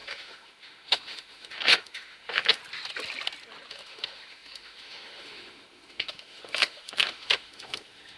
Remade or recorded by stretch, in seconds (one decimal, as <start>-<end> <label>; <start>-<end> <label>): 0.0-2.6 remade; 2.6-3.7 recorded; 3.7-8.2 remade

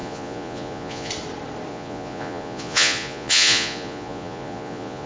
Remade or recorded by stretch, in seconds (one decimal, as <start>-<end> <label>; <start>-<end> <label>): 0.0-1.1 remade; 1.1-1.7 recorded; 1.7-5.1 remade

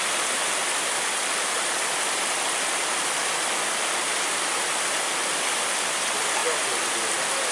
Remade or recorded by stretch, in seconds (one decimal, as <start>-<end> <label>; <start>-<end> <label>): 0.0-7.5 recorded

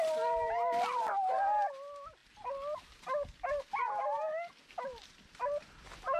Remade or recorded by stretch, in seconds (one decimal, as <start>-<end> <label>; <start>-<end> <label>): 0.0-6.2 recorded

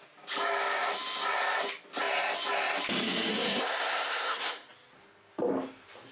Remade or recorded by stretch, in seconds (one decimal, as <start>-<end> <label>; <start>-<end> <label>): 0.0-3.3 recorded; 3.3-4.7 remade; 4.7-6.1 recorded